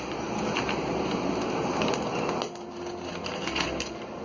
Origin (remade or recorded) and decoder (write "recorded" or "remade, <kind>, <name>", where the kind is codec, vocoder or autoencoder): recorded